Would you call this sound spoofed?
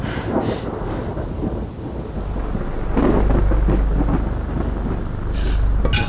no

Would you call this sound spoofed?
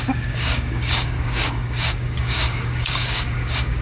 yes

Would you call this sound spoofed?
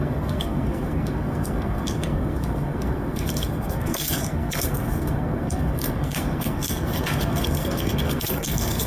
yes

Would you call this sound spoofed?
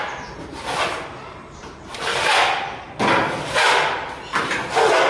no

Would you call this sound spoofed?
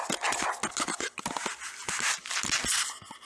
no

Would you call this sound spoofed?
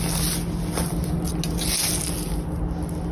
no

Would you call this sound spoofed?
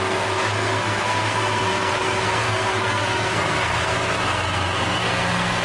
yes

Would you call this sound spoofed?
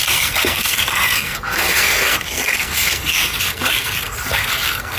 yes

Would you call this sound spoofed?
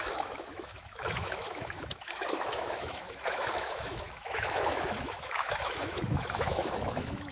yes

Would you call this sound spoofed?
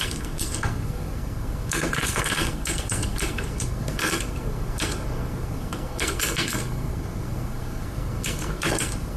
yes